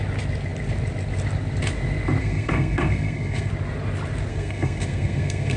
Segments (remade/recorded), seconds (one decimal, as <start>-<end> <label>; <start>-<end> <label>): 0.0-2.2 recorded; 2.2-3.5 remade; 3.5-4.3 recorded; 4.3-5.6 remade